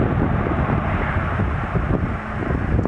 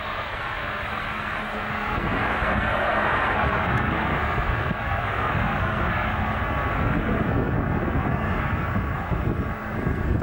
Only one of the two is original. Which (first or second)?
first